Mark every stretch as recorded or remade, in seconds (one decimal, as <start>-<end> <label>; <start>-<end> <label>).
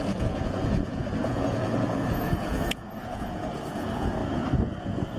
0.0-4.2 remade; 4.2-4.8 recorded; 4.8-5.2 remade